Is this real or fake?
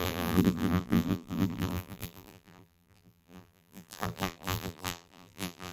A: fake